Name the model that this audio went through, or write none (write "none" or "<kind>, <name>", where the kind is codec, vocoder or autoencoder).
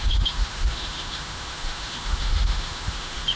autoencoder, DAC-VAE